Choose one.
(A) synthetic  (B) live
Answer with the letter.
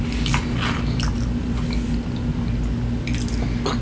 B